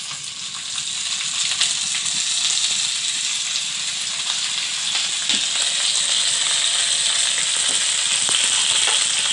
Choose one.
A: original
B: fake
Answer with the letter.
A